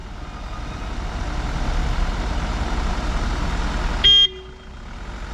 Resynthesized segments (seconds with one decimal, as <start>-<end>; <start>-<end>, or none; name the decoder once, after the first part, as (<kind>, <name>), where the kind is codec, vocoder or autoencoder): none

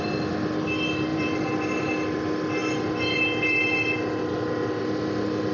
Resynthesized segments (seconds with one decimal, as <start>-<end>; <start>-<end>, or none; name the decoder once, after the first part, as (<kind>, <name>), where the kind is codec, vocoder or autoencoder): 1.1-1.6 (vocoder, BigVGAN v2)